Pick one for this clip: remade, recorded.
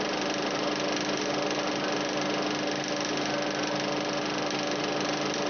recorded